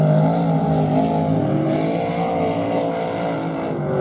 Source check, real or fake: real